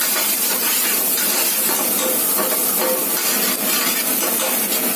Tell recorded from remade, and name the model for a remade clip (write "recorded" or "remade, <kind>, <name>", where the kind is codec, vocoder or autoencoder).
recorded